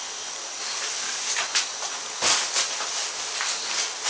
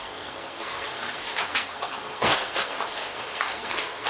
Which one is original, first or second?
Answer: first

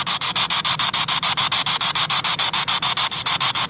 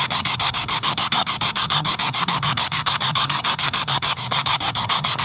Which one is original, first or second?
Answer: first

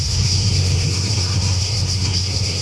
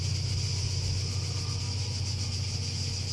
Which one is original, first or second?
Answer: second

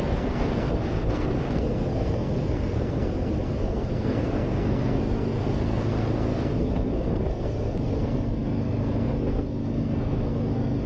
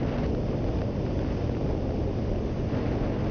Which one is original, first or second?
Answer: second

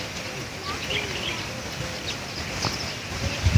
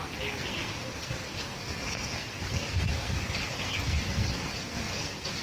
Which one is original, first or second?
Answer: first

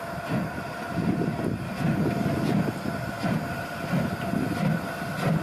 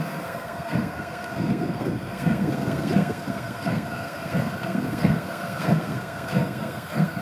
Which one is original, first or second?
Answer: first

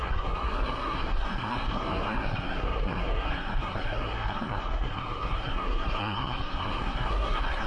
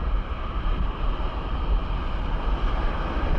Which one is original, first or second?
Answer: second